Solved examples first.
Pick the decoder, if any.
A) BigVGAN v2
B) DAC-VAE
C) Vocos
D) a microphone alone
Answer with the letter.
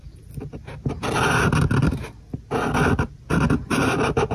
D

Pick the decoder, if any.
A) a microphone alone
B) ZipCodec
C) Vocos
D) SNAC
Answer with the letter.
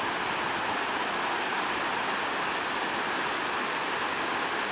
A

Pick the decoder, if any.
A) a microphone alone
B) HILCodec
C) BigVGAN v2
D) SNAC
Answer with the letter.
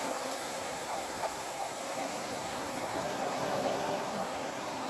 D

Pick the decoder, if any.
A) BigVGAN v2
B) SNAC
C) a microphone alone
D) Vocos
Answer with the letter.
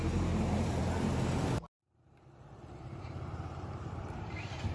A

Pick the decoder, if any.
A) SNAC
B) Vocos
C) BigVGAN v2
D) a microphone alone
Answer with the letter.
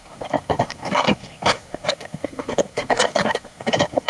A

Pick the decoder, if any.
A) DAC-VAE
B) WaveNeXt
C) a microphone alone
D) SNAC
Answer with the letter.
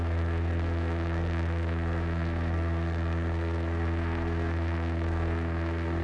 D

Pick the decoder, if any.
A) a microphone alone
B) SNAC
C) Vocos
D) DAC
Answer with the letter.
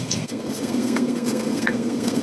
B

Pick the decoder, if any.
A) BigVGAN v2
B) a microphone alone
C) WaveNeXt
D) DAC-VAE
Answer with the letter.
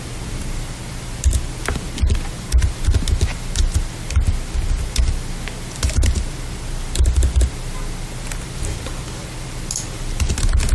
B